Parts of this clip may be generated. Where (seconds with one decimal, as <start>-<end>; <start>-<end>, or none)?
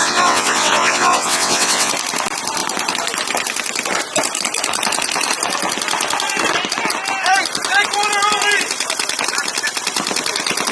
0.0-1.9